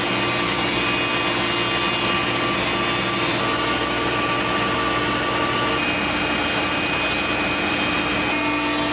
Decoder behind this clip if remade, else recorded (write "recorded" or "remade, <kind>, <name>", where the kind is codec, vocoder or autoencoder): recorded